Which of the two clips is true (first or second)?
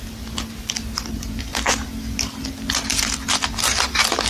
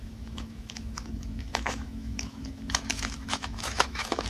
first